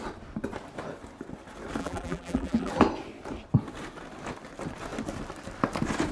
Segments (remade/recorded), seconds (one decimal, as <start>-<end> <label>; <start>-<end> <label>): 0.0-1.8 recorded; 1.8-2.7 remade; 2.7-6.1 recorded